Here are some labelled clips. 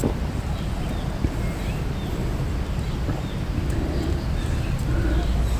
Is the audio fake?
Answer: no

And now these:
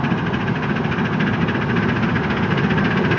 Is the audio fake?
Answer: no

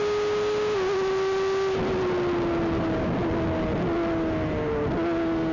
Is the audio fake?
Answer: no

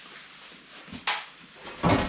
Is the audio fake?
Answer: no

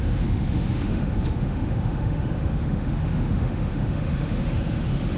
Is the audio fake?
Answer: yes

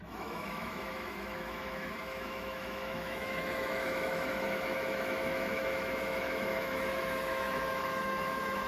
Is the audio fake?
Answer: yes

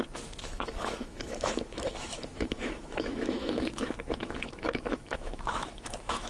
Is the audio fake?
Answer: yes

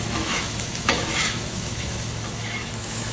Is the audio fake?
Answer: yes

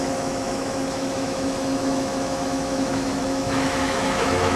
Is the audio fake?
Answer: yes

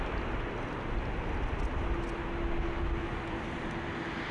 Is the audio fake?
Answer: no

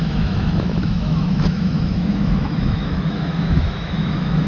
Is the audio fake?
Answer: yes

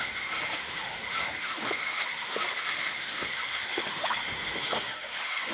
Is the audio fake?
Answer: yes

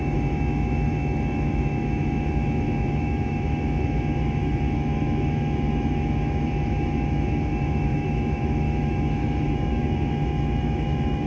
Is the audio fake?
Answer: yes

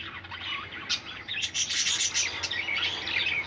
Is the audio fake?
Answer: no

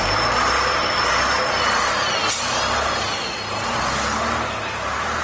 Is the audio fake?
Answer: no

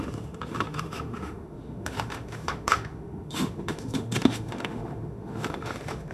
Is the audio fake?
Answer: yes